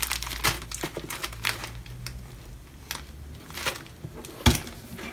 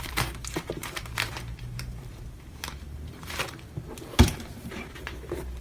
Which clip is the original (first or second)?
first